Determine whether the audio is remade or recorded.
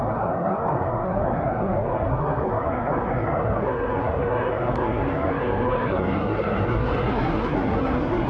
remade